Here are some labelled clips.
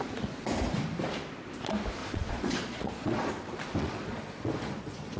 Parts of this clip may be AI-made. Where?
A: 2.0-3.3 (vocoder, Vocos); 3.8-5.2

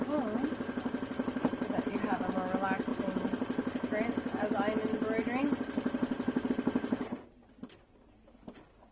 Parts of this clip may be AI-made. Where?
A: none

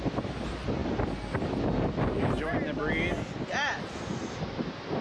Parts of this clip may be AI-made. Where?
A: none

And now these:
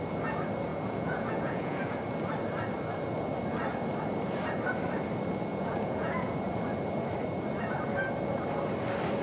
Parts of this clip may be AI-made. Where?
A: 0.7-2.0 (vocoder, Vocos); 5.5-6.3